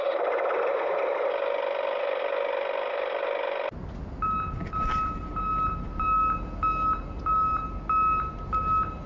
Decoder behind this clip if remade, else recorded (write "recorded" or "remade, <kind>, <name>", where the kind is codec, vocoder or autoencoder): recorded